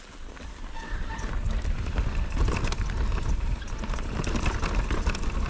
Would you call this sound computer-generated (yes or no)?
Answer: no